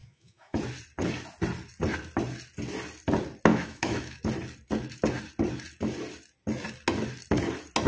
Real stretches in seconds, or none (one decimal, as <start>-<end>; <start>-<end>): 0.6-3.5; 4.2-7.9